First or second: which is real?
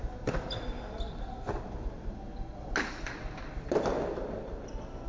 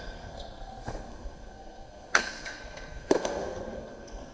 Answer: first